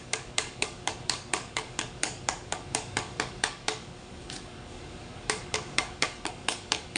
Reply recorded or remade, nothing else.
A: remade